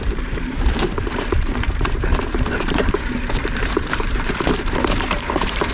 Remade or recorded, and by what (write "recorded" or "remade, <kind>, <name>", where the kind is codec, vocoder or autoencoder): remade, vocoder, BigVGAN v2